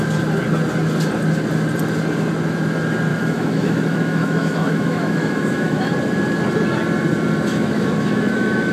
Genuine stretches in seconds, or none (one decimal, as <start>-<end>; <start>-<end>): 0.0-3.1; 5.9-7.5